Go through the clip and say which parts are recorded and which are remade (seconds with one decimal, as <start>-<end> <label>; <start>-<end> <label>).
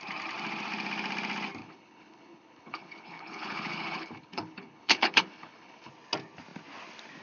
0.0-1.6 recorded; 1.6-5.9 remade; 5.9-7.2 recorded